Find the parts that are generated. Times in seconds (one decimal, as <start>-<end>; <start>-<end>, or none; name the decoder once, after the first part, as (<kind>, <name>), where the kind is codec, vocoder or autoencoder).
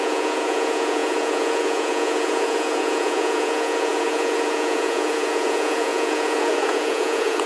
0.0-7.5 (vocoder, Vocos)